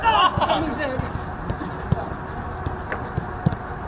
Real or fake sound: real